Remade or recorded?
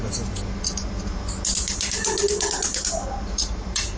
remade